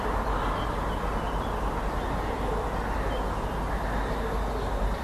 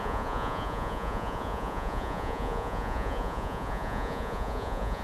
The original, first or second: first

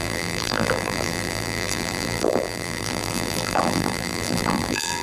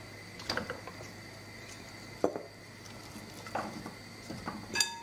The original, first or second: second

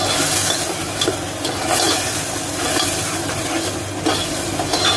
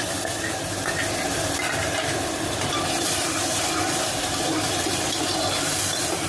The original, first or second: first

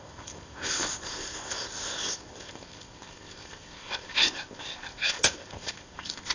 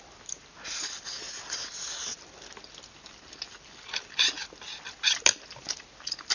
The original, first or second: second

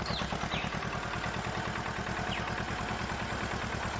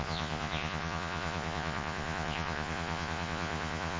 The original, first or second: first